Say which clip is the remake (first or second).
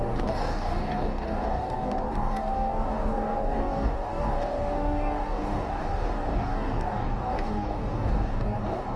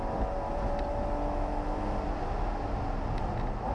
first